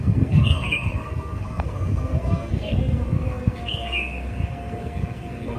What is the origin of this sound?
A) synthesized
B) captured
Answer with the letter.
A